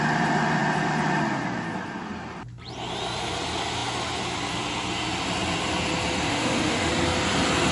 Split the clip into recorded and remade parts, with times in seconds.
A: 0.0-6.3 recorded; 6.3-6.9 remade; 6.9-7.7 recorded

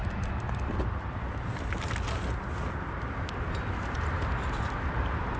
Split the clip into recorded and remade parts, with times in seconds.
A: 0.0-5.4 recorded

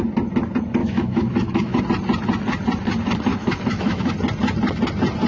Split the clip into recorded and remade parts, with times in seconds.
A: 0.0-0.8 recorded; 0.8-1.8 remade; 1.8-3.3 recorded; 3.3-4.1 remade; 4.1-5.3 recorded

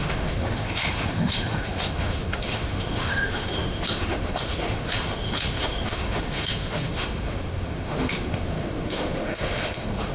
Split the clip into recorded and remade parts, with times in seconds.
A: 0.0-10.1 remade

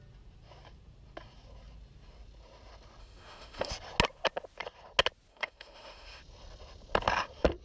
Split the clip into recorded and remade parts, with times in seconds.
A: 0.0-3.0 recorded; 3.0-3.7 remade; 3.7-5.3 recorded; 5.3-6.2 remade; 6.2-7.6 recorded

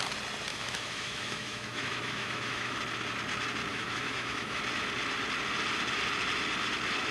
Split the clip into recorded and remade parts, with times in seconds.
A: 0.0-0.5 recorded; 0.5-2.8 remade; 2.8-3.7 recorded; 3.7-4.6 remade; 4.6-7.1 recorded